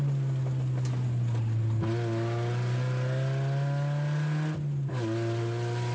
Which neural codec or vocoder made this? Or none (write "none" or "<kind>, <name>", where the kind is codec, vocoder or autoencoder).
none